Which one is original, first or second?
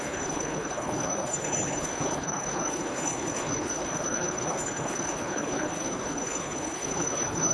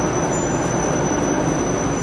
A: second